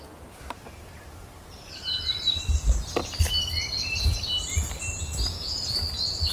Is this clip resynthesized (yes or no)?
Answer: no